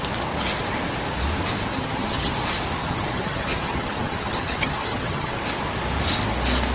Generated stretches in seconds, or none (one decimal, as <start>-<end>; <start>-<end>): 1.7-2.3; 2.8-5.4